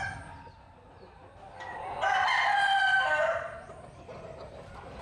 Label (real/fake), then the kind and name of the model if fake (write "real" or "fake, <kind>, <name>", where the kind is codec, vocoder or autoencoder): real